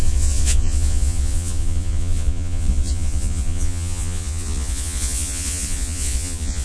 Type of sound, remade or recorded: remade